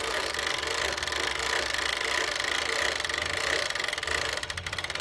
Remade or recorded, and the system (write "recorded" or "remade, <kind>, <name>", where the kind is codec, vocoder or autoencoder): recorded